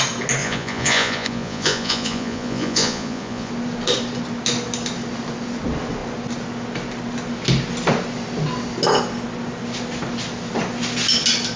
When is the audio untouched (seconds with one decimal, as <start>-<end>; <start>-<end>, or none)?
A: 0.0-0.4; 3.5-11.6